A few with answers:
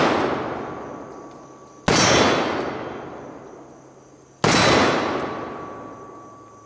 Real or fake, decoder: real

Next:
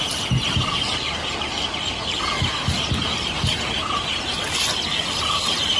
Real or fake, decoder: real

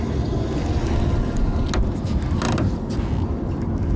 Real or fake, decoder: real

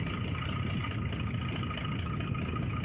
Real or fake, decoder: real